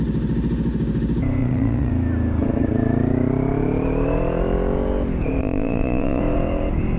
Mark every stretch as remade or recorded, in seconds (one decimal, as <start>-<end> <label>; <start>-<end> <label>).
0.0-1.4 recorded; 1.4-1.9 remade; 1.9-5.4 recorded; 5.4-6.2 remade; 6.2-7.0 recorded